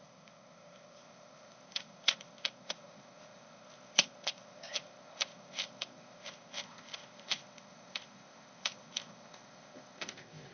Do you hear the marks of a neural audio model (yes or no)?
yes